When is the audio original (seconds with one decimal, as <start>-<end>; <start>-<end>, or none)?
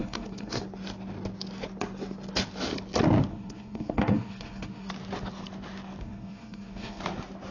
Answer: 0.6-3.3; 4.9-6.0; 7.0-7.5